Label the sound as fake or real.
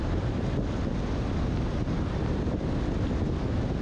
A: real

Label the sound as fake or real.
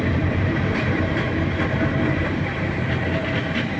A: fake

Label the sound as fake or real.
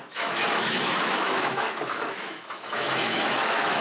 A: fake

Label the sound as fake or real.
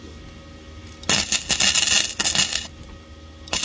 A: real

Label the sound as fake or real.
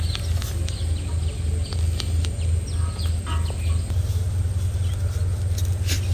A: real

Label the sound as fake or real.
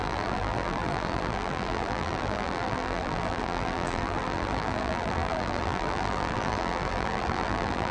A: fake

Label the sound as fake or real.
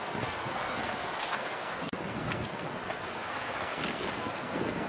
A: fake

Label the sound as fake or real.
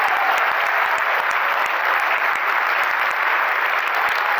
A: fake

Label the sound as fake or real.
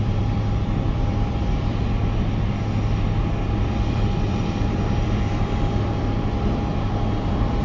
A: fake